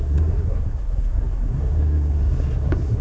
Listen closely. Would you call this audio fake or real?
fake